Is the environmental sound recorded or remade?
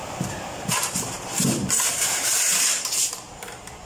remade